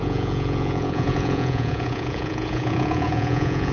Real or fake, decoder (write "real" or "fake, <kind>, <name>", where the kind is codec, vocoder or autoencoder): fake, vocoder, Vocos